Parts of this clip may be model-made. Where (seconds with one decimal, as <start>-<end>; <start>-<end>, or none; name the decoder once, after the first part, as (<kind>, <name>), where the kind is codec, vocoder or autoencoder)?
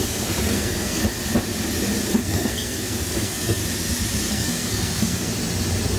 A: 0.0-1.0 (codec, SNAC); 2.1-3.6; 4.3-5.3